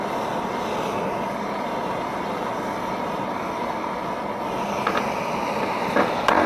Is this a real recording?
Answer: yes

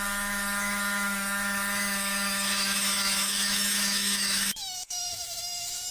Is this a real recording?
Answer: no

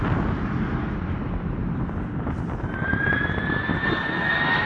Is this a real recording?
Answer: yes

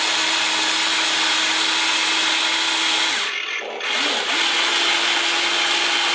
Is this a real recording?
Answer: yes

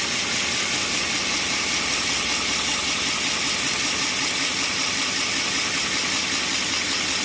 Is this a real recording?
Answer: yes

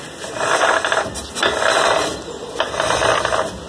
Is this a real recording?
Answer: yes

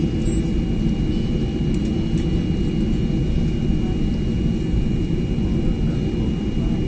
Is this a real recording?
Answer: yes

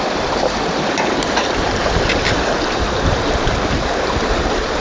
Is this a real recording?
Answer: no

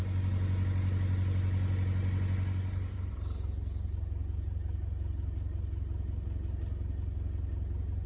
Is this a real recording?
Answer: yes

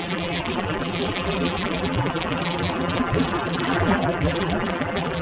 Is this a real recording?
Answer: no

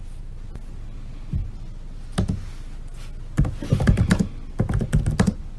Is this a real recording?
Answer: yes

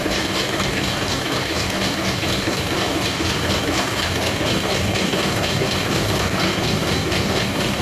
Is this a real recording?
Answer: no